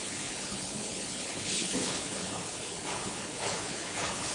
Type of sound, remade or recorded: remade